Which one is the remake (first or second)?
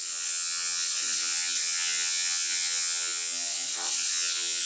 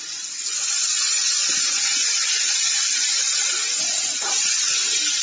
first